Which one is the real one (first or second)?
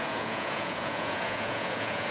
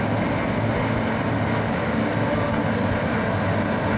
second